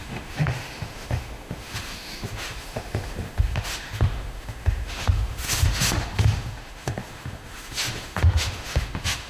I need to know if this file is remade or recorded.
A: remade